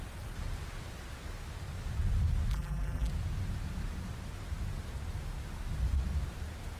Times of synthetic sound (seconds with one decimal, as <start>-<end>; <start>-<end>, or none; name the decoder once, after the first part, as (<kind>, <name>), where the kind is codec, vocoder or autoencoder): 2.5-3.1 (vocoder, BigVGAN v2)